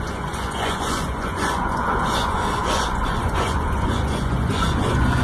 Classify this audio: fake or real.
fake